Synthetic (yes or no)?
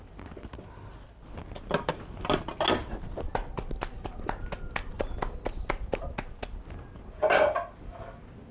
no